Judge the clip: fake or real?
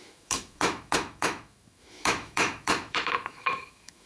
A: fake